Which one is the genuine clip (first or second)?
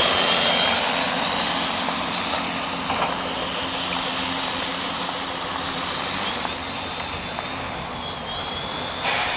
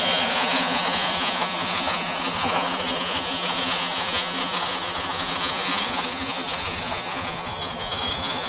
first